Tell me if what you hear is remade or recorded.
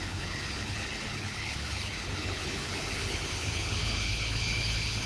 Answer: remade